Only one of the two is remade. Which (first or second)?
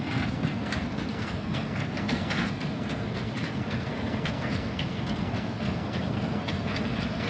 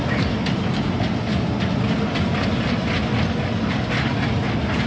first